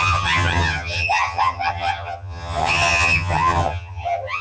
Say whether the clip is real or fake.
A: fake